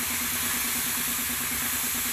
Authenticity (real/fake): real